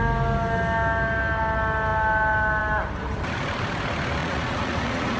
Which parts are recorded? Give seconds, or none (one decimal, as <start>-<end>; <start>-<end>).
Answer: 0.0-4.2